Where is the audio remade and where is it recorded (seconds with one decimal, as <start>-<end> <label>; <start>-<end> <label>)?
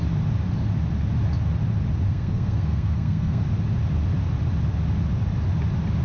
0.0-2.1 recorded; 2.1-3.4 remade; 3.4-6.0 recorded